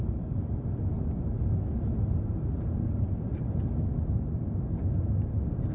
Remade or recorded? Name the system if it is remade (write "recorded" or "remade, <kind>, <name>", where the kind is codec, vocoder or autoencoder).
recorded